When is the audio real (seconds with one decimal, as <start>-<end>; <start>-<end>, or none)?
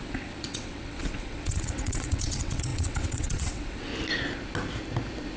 3.9-5.4